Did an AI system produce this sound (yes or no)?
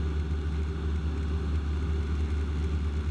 no